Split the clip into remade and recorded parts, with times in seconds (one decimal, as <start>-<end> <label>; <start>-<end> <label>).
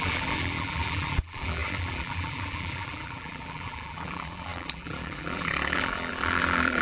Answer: 0.0-6.8 remade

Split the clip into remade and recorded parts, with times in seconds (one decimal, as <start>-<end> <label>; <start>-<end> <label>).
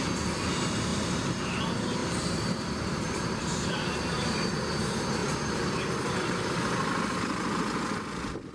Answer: 0.0-0.9 recorded; 0.9-1.6 remade; 1.6-2.0 recorded; 2.0-4.5 remade; 4.5-5.2 recorded; 5.2-5.7 remade; 5.7-8.5 recorded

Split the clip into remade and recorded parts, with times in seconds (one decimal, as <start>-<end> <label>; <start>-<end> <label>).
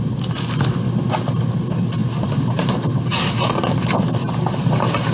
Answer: 0.0-2.0 recorded; 2.0-3.0 remade; 3.0-4.2 recorded; 4.2-5.1 remade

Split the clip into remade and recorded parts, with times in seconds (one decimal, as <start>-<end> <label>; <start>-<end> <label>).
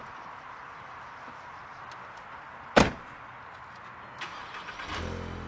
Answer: 0.0-5.5 recorded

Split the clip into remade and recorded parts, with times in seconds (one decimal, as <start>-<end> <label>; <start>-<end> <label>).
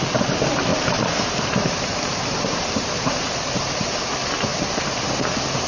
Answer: 0.0-0.7 recorded; 0.7-3.8 remade; 3.8-5.7 recorded